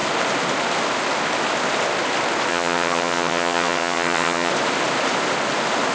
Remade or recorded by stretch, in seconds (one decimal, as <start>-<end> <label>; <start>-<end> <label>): 0.0-2.5 recorded; 2.5-4.5 remade; 4.5-5.9 recorded